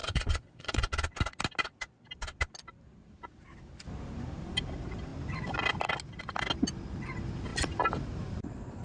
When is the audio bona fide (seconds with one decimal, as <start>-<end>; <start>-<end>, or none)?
0.9-8.8